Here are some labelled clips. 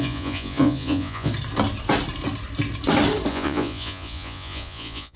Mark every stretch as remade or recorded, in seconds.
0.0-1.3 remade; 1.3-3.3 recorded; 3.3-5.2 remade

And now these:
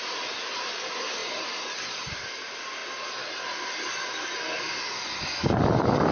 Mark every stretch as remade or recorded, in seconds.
0.0-6.1 recorded

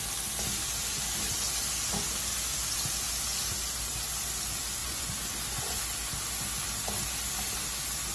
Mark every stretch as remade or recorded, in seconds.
0.0-4.8 recorded; 4.8-5.8 remade; 5.8-8.1 recorded

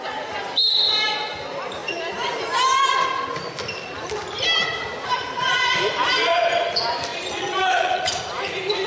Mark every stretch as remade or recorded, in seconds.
0.0-7.1 recorded; 7.1-8.2 remade; 8.2-8.9 recorded

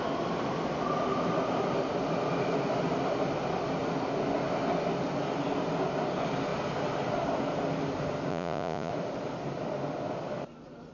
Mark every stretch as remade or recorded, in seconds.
0.0-8.3 recorded; 8.3-8.9 remade; 8.9-10.9 recorded

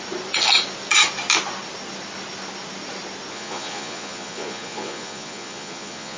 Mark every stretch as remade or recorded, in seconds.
0.0-3.3 recorded; 3.3-6.2 remade

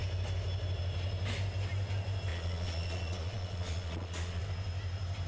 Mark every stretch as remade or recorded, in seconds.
0.0-2.3 recorded; 2.3-4.4 remade; 4.4-5.3 recorded

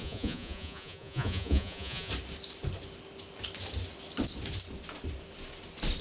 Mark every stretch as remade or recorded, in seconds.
0.0-2.1 remade; 2.1-6.0 recorded